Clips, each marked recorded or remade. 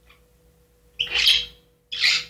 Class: recorded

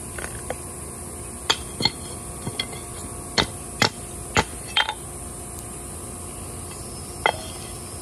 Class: recorded